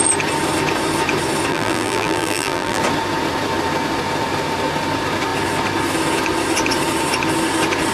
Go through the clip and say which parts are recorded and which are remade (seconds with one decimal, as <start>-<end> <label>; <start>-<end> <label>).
0.0-1.5 recorded; 1.5-2.8 remade; 2.8-7.9 recorded